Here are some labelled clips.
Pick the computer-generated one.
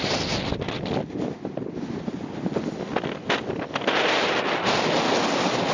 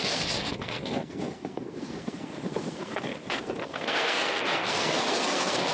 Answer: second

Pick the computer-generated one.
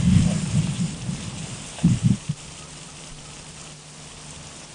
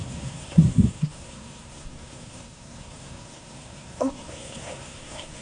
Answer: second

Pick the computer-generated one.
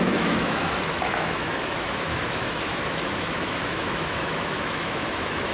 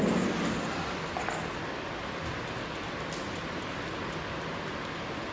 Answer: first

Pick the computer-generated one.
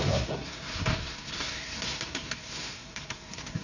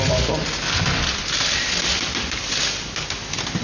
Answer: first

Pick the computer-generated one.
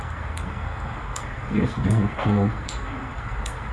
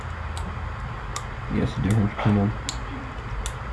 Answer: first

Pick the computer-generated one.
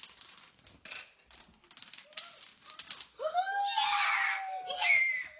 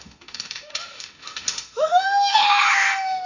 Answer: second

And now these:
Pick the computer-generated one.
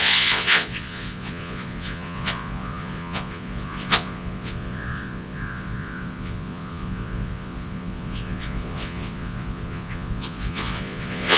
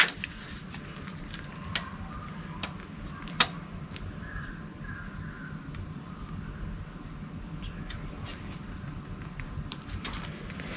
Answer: first